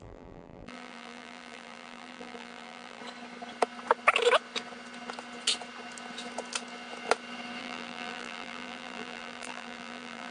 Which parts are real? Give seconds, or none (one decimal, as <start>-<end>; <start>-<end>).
3.0-7.6